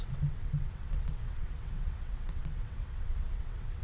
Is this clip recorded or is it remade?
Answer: remade